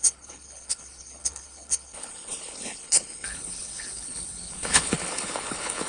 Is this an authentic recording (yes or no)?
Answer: no